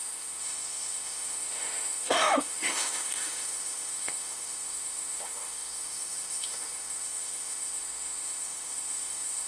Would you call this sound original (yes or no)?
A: no